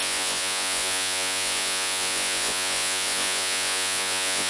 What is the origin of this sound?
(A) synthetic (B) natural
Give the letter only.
A